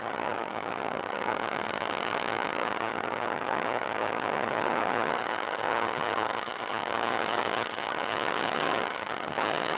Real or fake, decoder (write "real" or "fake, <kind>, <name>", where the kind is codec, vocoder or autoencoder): fake, vocoder, HiFi-GAN